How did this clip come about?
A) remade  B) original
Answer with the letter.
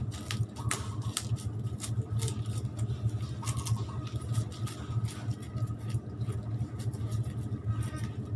B